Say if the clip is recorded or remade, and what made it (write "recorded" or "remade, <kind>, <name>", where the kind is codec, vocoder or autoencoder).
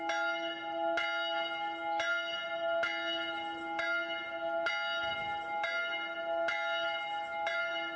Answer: recorded